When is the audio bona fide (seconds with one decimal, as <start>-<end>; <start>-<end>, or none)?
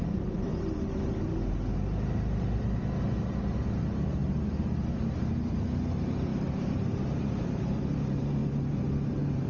0.5-3.0